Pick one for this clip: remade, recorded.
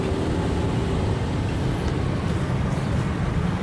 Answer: recorded